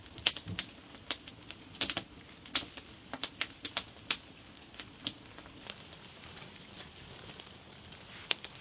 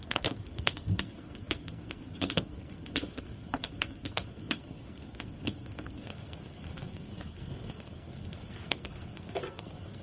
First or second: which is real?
first